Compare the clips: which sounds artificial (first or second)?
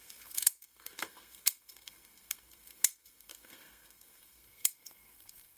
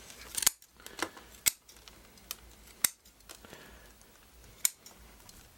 first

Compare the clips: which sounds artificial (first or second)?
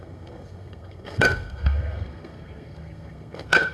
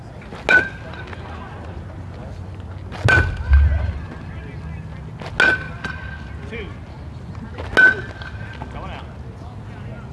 first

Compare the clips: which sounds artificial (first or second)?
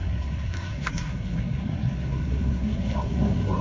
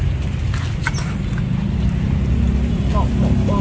first